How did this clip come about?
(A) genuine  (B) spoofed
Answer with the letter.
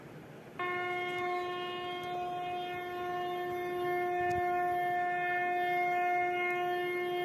A